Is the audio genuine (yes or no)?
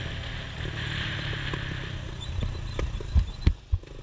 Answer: yes